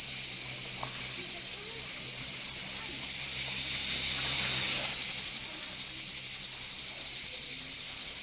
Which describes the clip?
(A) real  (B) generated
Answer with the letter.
A